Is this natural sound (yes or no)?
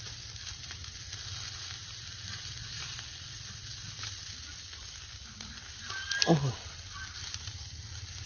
yes